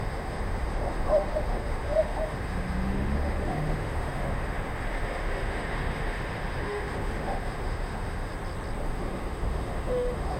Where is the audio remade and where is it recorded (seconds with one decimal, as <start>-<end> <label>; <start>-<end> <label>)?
0.0-8.3 remade; 8.3-8.8 recorded; 8.8-10.4 remade